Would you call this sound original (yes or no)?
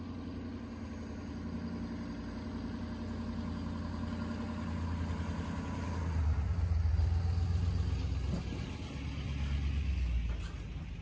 yes